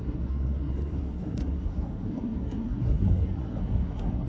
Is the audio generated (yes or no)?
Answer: yes